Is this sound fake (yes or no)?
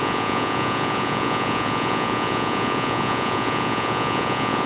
yes